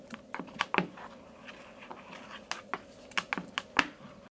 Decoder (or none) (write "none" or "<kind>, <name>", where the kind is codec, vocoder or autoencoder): none